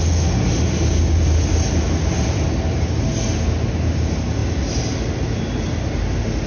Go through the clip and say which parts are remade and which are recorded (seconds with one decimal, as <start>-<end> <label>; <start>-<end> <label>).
0.0-6.5 recorded